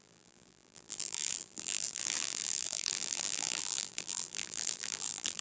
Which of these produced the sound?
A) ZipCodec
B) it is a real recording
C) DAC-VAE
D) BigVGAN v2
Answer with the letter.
D